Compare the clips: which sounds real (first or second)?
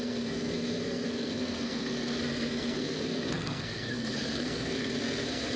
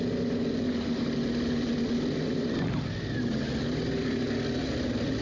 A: second